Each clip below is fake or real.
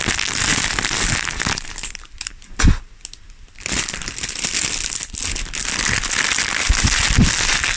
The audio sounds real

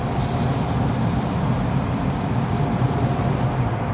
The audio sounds real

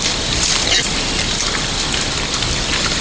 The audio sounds real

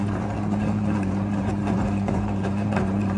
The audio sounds fake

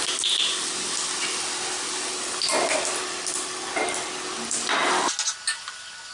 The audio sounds real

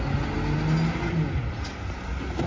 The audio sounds real